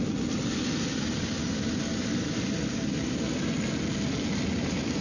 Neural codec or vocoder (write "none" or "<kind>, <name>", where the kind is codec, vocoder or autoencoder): none